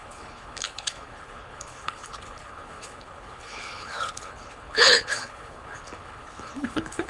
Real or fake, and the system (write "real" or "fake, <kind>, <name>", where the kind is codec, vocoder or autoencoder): fake, codec, HILCodec